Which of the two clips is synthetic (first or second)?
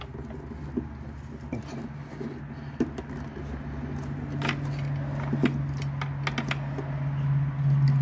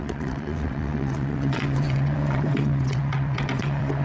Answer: second